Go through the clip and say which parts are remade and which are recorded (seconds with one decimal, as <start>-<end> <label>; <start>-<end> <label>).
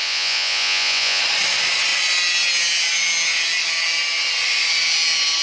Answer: 0.0-1.2 remade; 1.2-5.4 recorded